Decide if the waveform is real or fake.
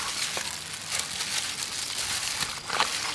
real